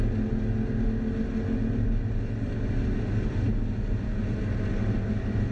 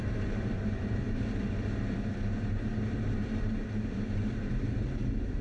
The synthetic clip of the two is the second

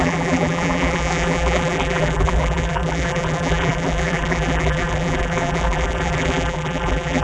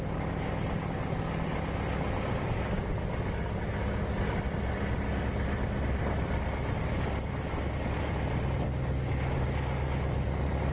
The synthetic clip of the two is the first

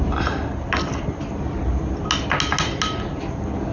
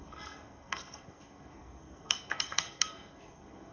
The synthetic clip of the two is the second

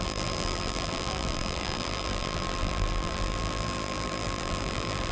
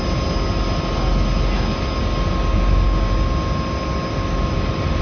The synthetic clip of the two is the first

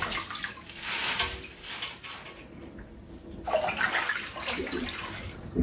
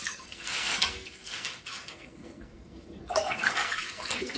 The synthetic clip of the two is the second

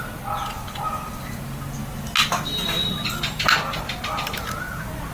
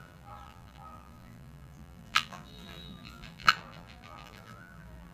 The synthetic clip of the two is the second